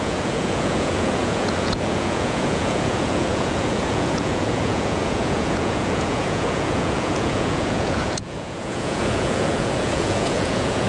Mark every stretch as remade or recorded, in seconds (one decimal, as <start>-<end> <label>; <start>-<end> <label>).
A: 0.0-10.9 remade